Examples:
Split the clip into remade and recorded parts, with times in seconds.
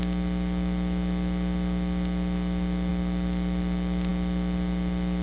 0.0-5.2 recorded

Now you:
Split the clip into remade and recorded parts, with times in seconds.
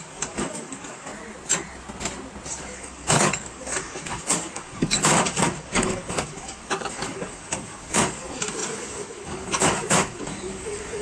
0.0-1.1 remade; 1.1-2.6 recorded; 2.6-11.0 remade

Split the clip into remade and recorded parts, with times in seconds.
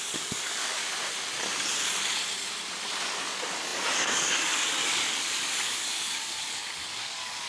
0.0-0.8 remade; 0.8-2.9 recorded; 2.9-7.5 remade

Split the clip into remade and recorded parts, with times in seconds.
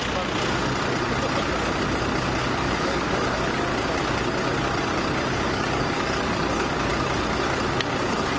0.0-2.4 recorded; 2.4-3.7 remade; 3.7-5.3 recorded; 5.3-6.9 remade; 6.9-7.9 recorded; 7.9-8.4 remade